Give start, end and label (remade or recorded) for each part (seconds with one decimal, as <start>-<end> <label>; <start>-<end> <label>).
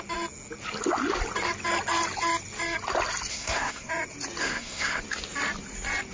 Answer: 0.0-3.3 recorded; 3.3-3.9 remade; 3.9-4.4 recorded; 4.4-5.0 remade; 5.0-6.1 recorded